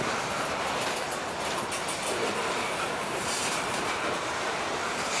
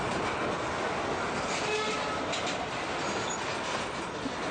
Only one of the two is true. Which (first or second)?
second